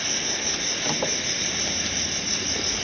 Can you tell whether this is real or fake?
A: real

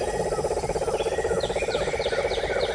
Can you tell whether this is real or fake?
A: real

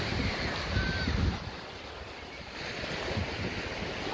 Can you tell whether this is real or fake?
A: real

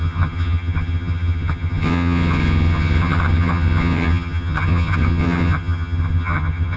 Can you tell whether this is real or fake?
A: fake